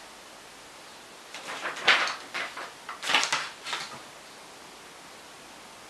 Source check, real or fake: real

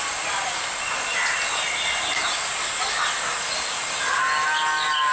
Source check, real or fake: real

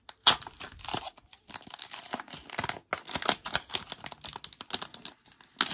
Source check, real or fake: real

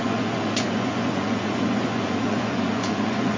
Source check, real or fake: fake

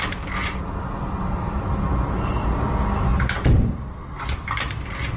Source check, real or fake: real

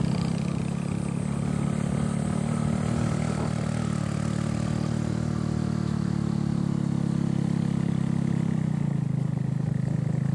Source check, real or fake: real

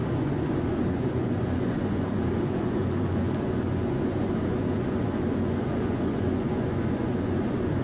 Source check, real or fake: fake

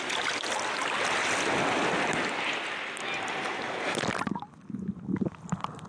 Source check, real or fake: real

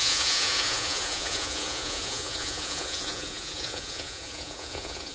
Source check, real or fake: fake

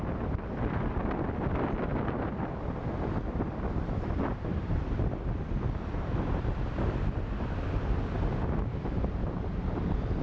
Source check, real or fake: real